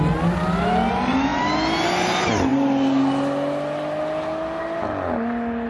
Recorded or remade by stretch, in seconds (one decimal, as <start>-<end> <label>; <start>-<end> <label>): 0.0-5.7 recorded